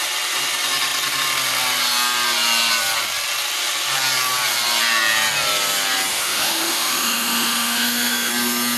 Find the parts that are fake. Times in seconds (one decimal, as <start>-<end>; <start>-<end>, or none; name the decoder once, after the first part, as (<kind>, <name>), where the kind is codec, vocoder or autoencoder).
6.1-8.3 (autoencoder, DAC-VAE)